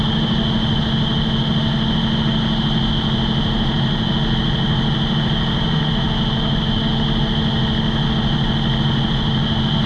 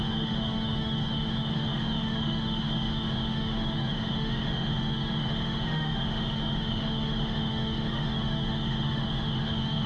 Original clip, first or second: first